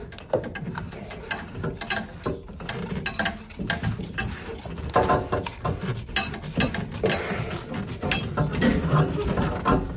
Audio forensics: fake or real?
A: real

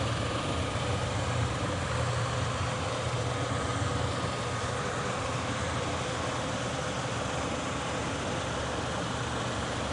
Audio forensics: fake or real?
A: real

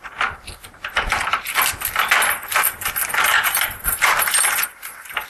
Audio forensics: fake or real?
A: real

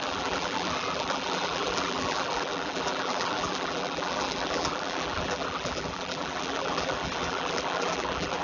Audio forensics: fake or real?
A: fake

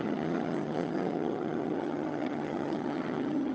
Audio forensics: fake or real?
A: fake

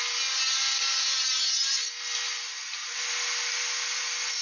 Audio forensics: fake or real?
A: real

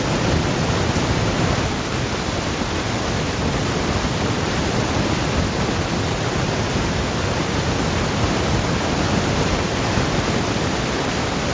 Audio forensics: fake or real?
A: real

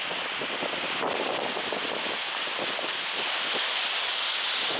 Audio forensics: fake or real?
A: real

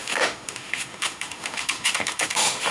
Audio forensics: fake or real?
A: fake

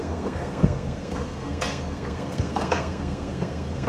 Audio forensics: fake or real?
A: fake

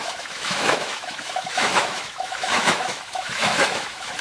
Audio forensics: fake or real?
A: fake